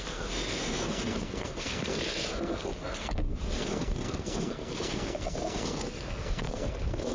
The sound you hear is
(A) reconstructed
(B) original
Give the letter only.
A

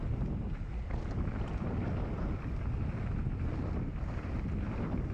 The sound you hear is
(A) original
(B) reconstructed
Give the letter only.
A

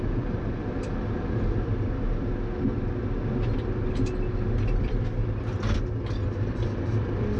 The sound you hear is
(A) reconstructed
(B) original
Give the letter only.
B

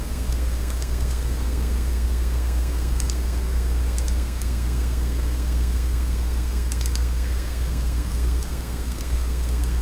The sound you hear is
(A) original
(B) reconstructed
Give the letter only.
B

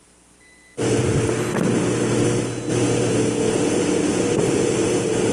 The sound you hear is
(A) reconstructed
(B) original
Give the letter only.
B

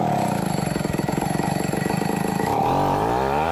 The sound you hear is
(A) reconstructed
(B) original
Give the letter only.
B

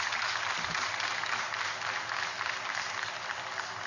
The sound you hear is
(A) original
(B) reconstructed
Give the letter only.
A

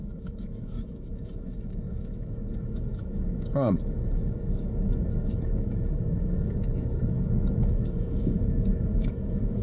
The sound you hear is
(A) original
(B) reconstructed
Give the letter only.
B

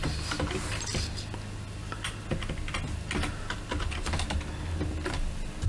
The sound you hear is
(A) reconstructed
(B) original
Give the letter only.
B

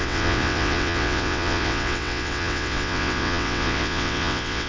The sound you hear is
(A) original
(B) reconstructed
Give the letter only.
B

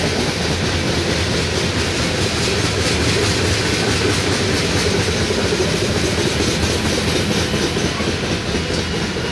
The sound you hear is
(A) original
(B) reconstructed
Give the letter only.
A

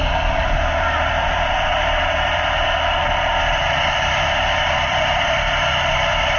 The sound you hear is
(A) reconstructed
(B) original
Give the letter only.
A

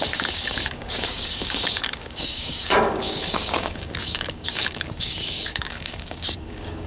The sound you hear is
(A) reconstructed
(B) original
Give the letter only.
A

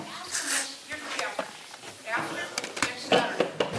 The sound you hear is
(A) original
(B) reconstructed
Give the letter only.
A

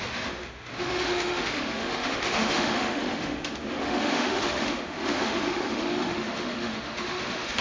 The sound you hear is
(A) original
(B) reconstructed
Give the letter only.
B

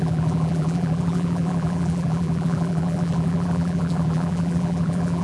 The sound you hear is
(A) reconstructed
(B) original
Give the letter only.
A